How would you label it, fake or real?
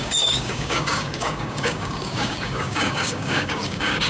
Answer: fake